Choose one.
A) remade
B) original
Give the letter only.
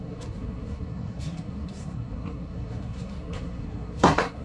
A